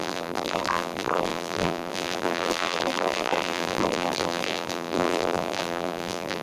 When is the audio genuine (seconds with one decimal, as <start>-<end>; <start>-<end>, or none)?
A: none